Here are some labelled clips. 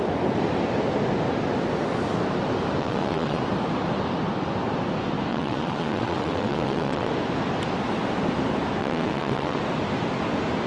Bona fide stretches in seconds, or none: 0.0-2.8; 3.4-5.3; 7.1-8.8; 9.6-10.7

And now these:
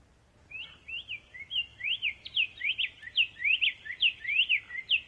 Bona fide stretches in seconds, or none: 0.0-1.7; 2.7-3.4; 4.5-5.1

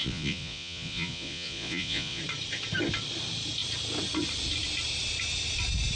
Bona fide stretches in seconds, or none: 2.2-6.0

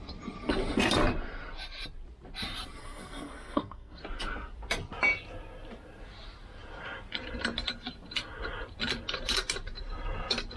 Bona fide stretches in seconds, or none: 0.0-2.8; 4.0-10.6